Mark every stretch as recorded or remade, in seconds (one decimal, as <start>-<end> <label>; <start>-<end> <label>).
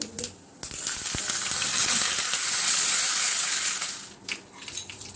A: 0.0-5.2 recorded